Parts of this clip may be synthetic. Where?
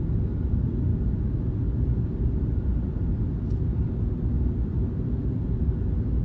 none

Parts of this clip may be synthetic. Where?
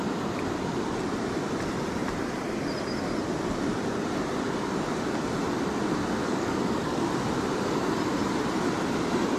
6.2-7.1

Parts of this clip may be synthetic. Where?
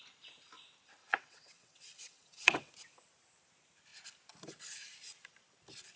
1.0-2.7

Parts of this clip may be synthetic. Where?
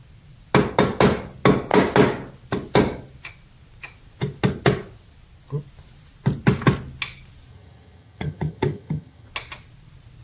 7.5-9.3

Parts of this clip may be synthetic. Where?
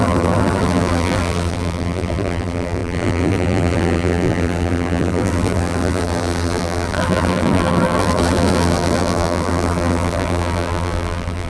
0.0-11.5